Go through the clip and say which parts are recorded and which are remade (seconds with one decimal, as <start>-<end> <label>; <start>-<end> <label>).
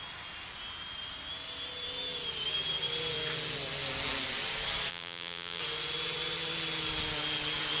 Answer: 0.0-4.9 recorded; 4.9-5.6 remade; 5.6-7.8 recorded